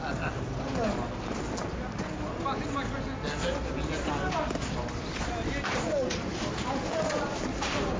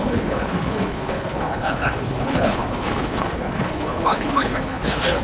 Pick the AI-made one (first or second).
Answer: second